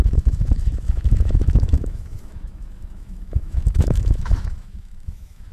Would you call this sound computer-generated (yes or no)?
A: yes